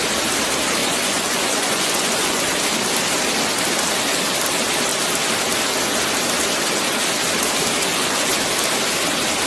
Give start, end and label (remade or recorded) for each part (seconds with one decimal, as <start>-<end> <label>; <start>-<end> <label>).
0.0-0.8 recorded; 0.8-2.4 remade; 2.4-7.9 recorded; 7.9-8.4 remade; 8.4-9.5 recorded